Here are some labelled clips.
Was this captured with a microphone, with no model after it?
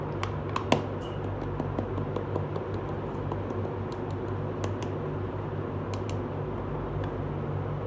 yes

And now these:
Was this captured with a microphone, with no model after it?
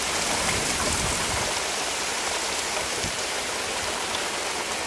yes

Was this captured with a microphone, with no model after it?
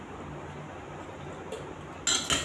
yes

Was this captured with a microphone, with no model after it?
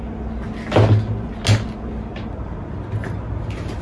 yes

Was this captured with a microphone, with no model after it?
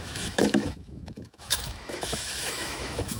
no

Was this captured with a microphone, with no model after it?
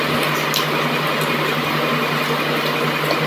yes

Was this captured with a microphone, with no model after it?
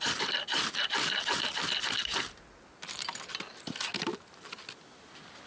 yes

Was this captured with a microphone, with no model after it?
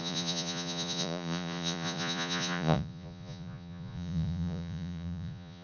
no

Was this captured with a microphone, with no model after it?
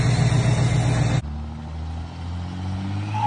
yes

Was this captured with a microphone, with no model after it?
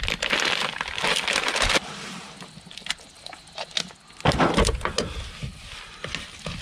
yes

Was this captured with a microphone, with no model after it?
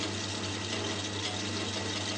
yes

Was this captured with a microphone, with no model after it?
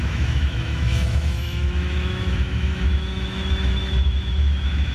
no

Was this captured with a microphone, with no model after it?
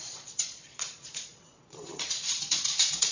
no